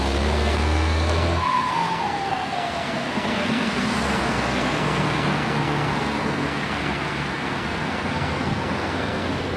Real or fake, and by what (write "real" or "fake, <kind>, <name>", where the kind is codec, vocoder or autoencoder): fake, codec, SNAC